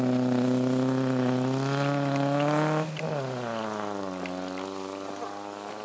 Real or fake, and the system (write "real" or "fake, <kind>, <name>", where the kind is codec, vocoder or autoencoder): real